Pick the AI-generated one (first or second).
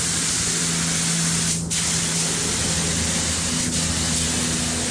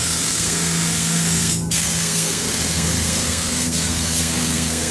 second